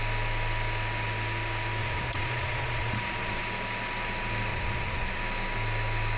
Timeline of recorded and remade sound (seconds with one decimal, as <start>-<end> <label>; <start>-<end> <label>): 0.0-1.8 recorded; 1.8-3.4 remade; 3.4-4.5 recorded; 4.5-5.2 remade; 5.2-6.2 recorded